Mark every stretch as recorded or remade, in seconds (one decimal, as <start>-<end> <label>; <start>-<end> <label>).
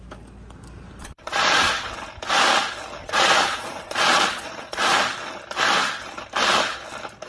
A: 0.0-1.0 recorded; 1.0-1.7 remade; 1.7-3.0 recorded; 3.0-4.8 remade; 4.8-7.3 recorded